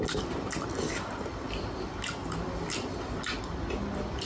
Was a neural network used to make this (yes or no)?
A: no